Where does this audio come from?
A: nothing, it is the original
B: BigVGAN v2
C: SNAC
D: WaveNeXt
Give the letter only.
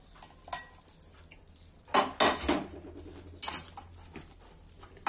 A